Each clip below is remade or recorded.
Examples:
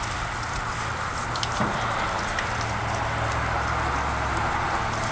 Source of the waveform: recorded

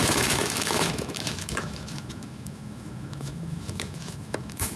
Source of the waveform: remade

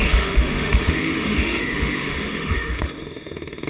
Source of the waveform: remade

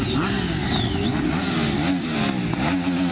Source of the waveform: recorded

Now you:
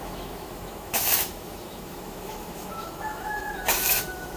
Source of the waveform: remade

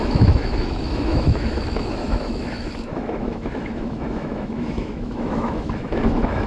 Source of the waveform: remade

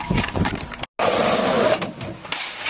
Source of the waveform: recorded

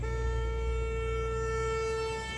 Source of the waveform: recorded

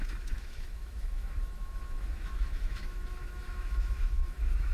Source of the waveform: remade